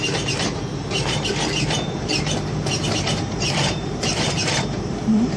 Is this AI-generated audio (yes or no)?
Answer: yes